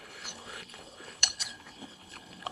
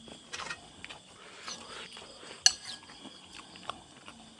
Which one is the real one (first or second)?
second